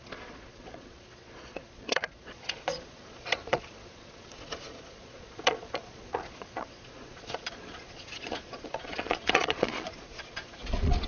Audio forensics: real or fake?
fake